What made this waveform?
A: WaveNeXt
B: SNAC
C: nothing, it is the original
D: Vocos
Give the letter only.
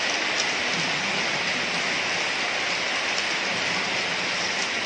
C